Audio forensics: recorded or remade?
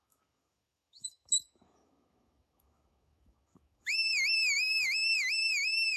remade